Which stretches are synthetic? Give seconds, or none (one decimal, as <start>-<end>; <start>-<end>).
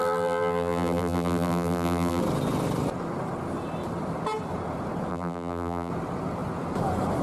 0.0-2.2; 5.1-5.9